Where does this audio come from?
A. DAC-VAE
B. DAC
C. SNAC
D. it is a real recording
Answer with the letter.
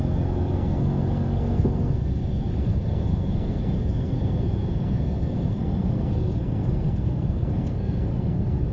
C